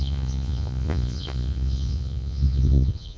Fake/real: fake